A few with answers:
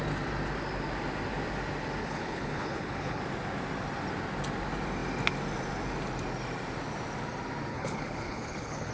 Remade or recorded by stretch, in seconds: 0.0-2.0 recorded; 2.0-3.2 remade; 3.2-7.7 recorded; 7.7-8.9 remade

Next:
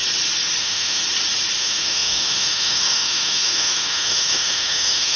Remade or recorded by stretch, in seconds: 0.0-0.6 recorded; 0.6-1.0 remade; 1.0-1.6 recorded; 1.6-5.2 remade

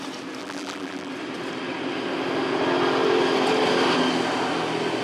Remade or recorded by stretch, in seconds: 0.0-0.4 recorded; 0.4-1.1 remade; 1.1-5.0 recorded

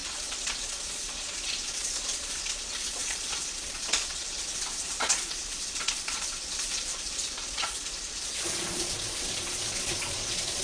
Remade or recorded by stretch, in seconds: 0.0-10.6 remade

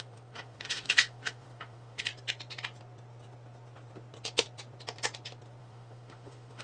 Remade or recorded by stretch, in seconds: 0.0-2.1 remade; 2.1-5.6 recorded; 5.6-6.6 remade